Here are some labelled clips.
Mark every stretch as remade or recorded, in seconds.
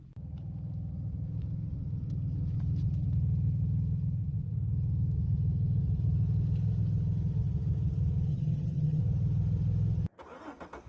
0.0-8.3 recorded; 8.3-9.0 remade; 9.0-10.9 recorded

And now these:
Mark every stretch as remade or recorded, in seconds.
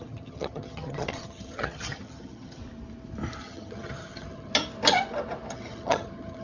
0.0-2.6 remade; 2.6-3.4 recorded; 3.4-4.5 remade; 4.5-5.5 recorded; 5.5-6.4 remade